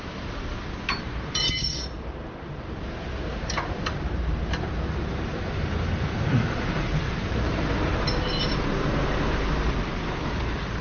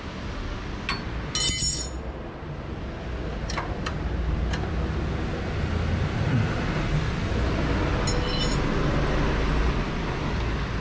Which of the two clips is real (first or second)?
second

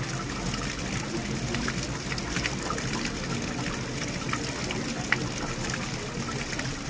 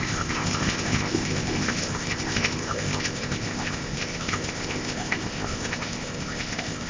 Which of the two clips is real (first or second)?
first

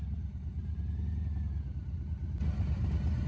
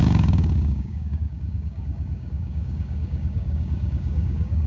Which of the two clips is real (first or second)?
first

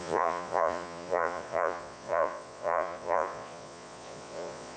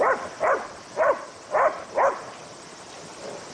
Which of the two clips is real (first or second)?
second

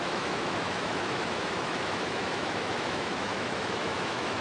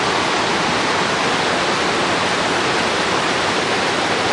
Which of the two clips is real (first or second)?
second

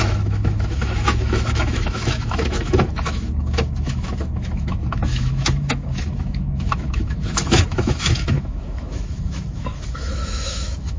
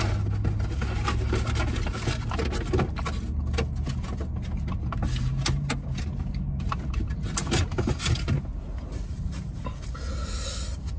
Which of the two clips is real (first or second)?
second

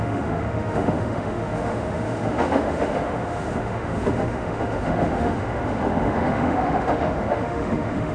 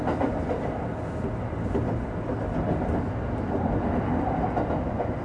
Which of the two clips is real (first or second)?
second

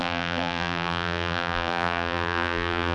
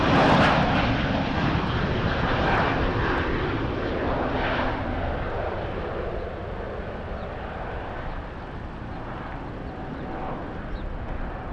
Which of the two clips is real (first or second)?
second